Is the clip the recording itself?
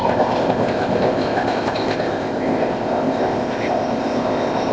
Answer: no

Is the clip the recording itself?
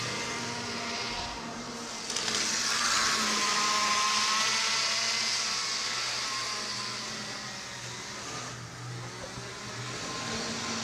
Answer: yes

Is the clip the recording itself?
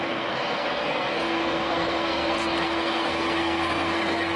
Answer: no